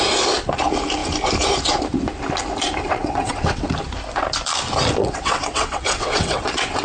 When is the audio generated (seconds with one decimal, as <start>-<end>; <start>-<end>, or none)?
2.8-3.7; 5.0-6.8